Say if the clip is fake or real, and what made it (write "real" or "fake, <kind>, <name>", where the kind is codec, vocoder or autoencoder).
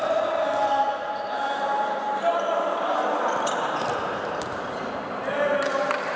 real